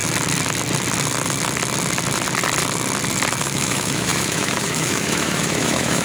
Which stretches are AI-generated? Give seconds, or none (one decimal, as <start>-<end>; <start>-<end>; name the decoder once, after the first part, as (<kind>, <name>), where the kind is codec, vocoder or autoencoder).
3.4-6.0 (autoencoder, DAC-VAE)

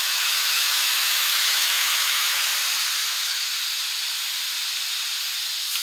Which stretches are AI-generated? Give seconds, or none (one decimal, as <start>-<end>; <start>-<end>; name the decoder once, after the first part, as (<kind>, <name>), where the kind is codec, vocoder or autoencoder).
0.0-2.5 (autoencoder, DAC-VAE); 3.1-3.5

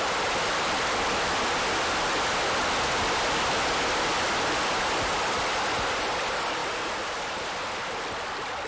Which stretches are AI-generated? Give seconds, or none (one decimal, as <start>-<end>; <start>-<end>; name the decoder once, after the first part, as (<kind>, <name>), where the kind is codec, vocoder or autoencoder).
none

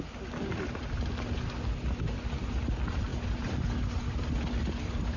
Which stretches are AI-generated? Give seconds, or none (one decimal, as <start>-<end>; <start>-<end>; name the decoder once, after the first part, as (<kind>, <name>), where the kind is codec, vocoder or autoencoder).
none

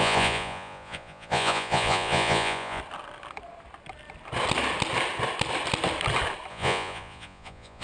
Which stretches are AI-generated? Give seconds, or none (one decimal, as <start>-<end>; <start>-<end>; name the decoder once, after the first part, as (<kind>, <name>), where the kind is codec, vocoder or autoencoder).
0.0-2.8 (vocoder, Vocos); 6.5-7.8

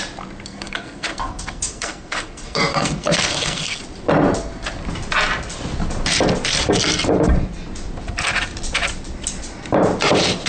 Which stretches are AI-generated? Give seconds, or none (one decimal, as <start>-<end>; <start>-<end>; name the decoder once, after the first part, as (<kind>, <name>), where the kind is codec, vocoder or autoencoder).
0.5-3.8 (codec, SNAC)